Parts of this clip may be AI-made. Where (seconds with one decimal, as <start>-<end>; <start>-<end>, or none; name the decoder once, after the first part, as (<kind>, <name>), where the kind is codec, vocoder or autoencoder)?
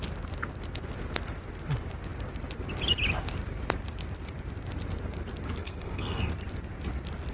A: 5.6-6.3 (codec, SNAC)